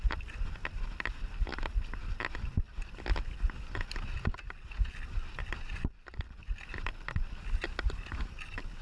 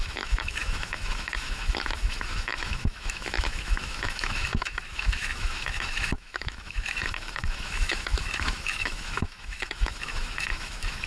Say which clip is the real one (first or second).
first